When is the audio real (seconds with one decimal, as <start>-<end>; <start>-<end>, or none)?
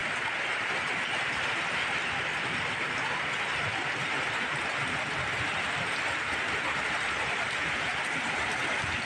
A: 0.0-9.1